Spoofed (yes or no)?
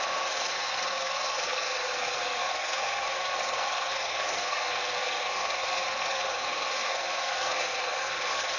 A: yes